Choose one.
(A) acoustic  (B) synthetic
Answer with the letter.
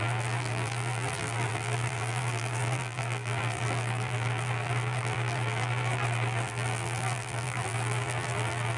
B